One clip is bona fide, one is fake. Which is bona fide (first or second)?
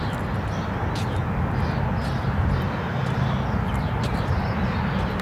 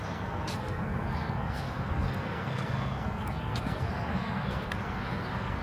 first